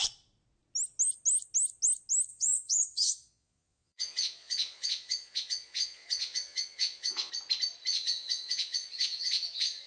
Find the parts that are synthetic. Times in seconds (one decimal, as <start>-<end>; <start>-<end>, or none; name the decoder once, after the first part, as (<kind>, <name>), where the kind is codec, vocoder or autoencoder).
2.3-7.3 (vocoder, Vocos); 7.9-9.9